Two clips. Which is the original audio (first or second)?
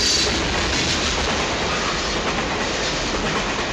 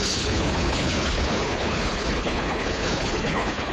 first